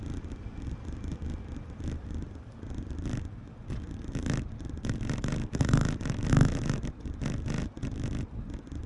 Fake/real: real